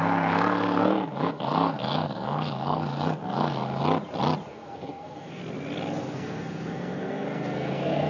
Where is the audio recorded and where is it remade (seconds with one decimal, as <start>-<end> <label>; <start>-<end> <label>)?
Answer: 0.0-3.8 remade; 3.8-4.5 recorded; 4.5-5.4 remade; 5.4-6.0 recorded; 6.0-8.1 remade